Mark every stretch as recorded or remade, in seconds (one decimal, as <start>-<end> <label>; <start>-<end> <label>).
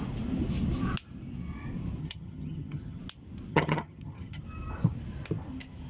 0.0-2.0 recorded; 2.0-3.0 remade; 3.0-3.5 recorded; 3.5-4.4 remade; 4.4-5.9 recorded